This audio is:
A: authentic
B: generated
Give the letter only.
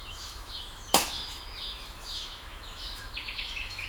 B